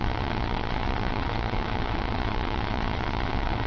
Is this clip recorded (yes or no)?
no